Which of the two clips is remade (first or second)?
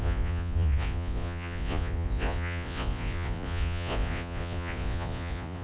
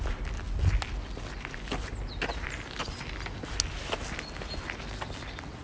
first